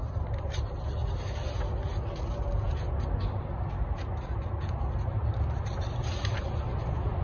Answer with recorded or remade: recorded